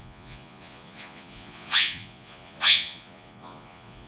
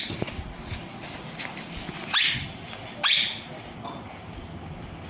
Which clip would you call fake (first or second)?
first